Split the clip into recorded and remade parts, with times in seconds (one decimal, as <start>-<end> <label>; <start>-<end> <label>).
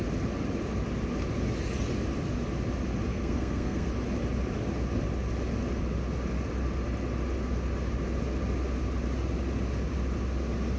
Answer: 0.0-3.1 recorded; 3.1-3.9 remade; 3.9-10.8 recorded